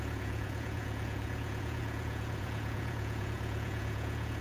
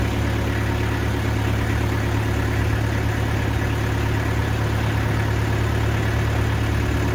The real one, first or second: second